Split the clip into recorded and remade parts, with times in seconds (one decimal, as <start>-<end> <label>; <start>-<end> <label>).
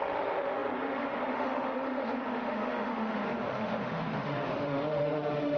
0.0-5.6 remade